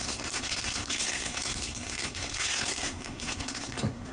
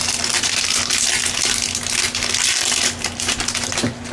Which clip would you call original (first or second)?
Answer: second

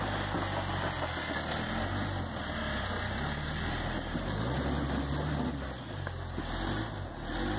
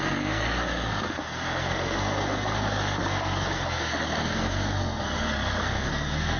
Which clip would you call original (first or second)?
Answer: first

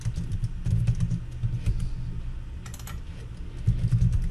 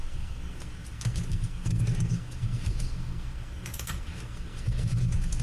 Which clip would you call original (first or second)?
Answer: first